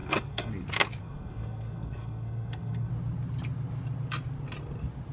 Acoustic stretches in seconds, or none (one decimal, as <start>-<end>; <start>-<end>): 0.5-1.0; 2.9-5.1